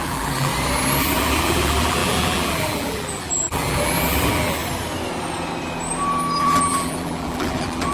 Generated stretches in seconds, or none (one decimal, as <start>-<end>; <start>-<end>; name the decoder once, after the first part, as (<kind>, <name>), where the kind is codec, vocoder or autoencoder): 0.0-0.5 (vocoder, BigVGAN v2); 1.0-4.6; 6.4-7.9